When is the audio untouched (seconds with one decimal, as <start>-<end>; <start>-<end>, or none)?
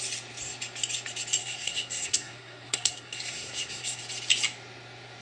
0.0-1.4; 4.0-5.2